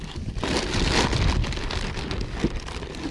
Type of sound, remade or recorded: recorded